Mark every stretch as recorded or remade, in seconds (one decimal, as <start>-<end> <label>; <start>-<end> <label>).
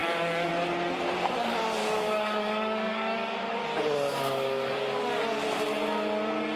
0.0-0.5 remade; 0.5-1.8 recorded; 1.8-3.4 remade; 3.4-4.1 recorded; 4.1-5.2 remade; 5.2-6.6 recorded